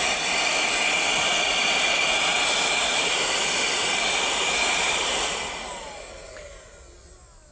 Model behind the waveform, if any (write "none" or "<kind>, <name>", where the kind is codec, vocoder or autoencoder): none